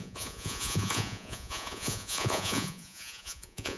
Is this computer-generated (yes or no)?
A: yes